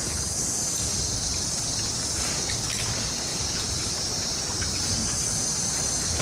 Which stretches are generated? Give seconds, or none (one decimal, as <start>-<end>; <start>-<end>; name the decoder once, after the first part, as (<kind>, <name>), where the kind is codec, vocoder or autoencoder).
3.3-5.8 (vocoder, BigVGAN v2)